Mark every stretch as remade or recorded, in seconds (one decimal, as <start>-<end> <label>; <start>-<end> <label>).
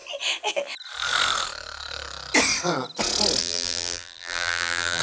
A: 0.0-3.4 recorded; 3.4-5.0 remade